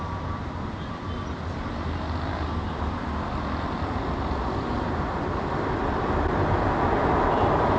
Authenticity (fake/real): fake